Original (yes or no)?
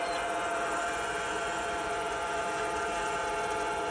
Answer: no